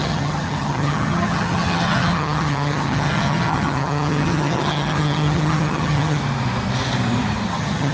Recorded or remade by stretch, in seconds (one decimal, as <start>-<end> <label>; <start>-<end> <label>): 0.0-6.2 remade; 6.2-7.5 recorded; 7.5-7.9 remade